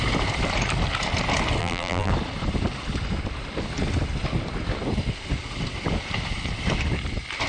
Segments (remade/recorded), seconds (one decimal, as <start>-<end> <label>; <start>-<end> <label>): 0.0-1.6 recorded; 1.6-2.1 remade; 2.1-7.5 recorded